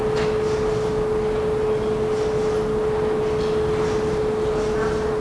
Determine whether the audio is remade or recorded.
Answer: recorded